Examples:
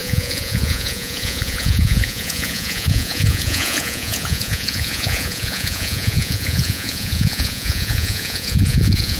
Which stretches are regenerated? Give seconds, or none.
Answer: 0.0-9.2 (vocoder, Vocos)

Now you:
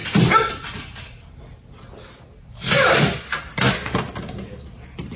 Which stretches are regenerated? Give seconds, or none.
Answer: none

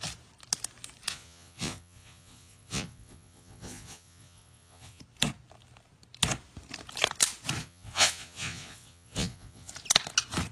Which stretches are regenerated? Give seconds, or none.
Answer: 1.1-5.0 (vocoder, Vocos); 7.6-9.7

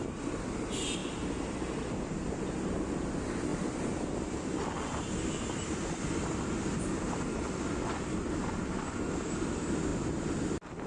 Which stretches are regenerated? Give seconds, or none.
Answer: none

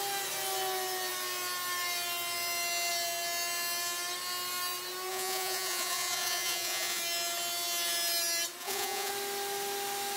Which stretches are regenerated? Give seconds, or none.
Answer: 5.1-7.0 (vocoder, Vocos); 8.6-9.1

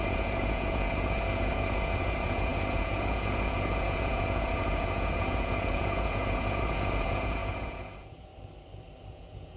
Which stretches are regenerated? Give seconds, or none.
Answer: 0.0-8.3 (vocoder, Vocos); 9.1-9.6

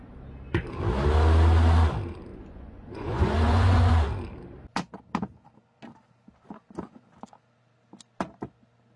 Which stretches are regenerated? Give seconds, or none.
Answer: 2.3-3.9 (vocoder, Vocos)